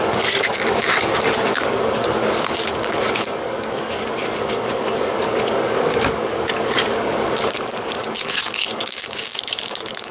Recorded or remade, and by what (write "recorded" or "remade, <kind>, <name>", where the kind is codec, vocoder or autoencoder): remade, codec, DAC